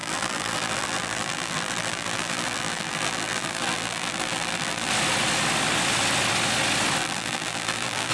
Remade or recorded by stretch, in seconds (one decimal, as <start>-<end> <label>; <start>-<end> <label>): 0.0-4.9 remade; 4.9-7.0 recorded; 7.0-8.1 remade